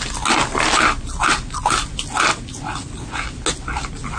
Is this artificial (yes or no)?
no